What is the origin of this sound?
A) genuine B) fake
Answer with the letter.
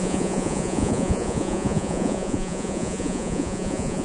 B